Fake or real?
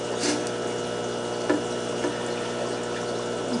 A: real